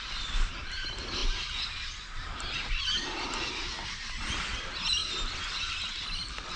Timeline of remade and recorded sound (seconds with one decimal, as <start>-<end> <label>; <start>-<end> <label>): 0.0-1.2 remade; 1.2-3.4 recorded; 3.4-5.0 remade; 5.0-6.6 recorded